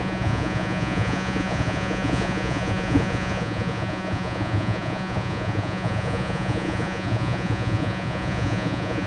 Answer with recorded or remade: remade